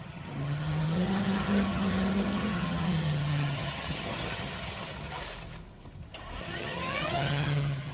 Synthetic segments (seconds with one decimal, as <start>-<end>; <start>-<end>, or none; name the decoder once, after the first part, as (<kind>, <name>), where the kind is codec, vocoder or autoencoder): 0.0-5.2 (vocoder, HiFi-GAN); 6.4-7.9